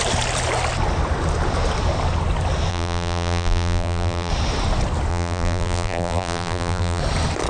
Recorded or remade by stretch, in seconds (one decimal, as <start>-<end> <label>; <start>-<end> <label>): 0.0-2.7 recorded; 2.7-4.3 remade; 4.3-5.1 recorded; 5.1-7.0 remade; 7.0-7.5 recorded